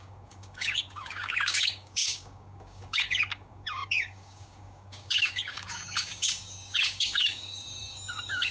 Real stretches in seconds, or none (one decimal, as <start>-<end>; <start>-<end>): none